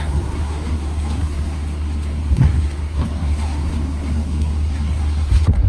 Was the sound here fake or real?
fake